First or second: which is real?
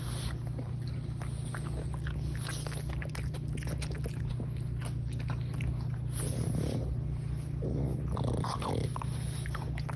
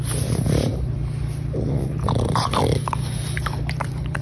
first